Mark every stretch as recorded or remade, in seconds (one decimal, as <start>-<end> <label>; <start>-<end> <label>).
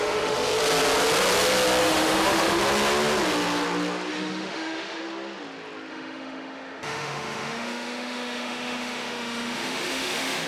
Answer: 0.0-0.5 remade; 0.5-1.8 recorded; 1.8-2.6 remade; 2.6-4.1 recorded; 4.1-5.0 remade; 5.0-5.9 recorded; 5.9-10.5 remade